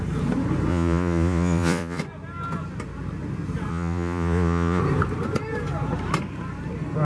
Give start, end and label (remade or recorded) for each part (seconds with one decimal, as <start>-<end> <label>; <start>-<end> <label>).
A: 0.0-0.7 recorded; 0.7-2.0 remade; 2.0-3.7 recorded; 3.7-4.8 remade; 4.8-7.0 recorded